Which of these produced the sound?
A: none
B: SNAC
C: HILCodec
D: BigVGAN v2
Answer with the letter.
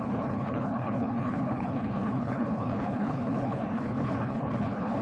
C